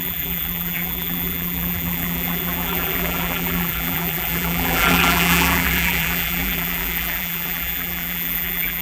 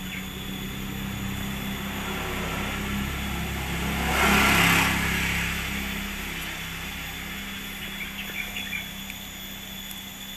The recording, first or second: second